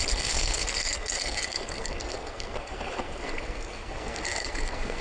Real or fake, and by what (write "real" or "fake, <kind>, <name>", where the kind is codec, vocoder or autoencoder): fake, codec, SNAC